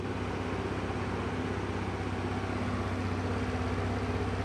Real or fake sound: real